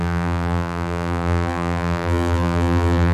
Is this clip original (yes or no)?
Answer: no